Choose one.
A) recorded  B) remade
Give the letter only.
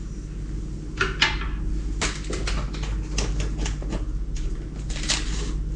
A